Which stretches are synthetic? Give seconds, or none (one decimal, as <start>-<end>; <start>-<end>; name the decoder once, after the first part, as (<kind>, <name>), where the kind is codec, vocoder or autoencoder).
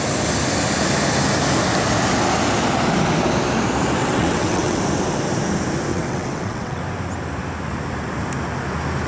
4.0-4.8 (vocoder, WaveNeXt); 5.9-6.8